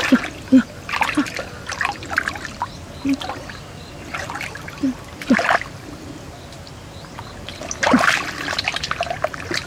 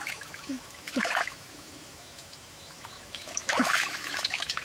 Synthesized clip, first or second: second